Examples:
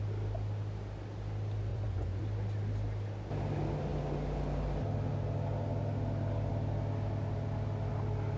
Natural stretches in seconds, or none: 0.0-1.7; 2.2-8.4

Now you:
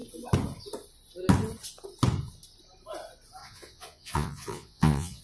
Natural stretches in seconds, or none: 0.0-3.4

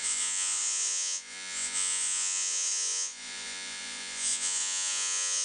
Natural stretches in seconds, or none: none

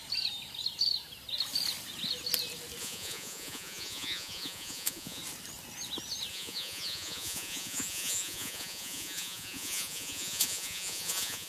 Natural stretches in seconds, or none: 0.0-2.8; 5.2-6.3

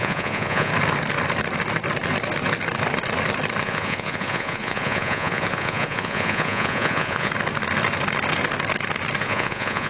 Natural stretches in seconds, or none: 0.7-3.6; 7.3-9.2

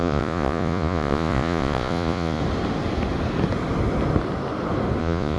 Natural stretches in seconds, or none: 2.4-5.0

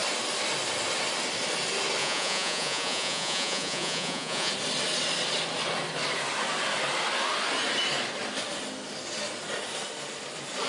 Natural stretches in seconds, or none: 0.0-2.0; 4.5-10.7

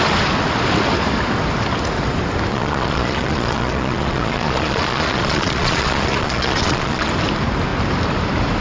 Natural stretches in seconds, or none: 0.0-2.5; 7.1-8.6